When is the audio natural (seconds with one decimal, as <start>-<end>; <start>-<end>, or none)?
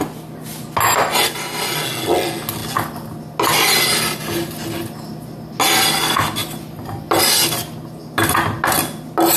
0.0-6.4; 7.4-9.4